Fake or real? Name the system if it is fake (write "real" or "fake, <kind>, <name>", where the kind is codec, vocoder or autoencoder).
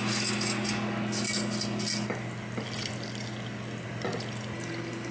real